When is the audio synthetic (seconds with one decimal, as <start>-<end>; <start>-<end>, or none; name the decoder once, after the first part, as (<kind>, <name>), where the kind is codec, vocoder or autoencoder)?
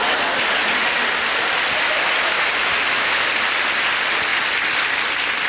2.6-3.3 (autoencoder, DAC-VAE)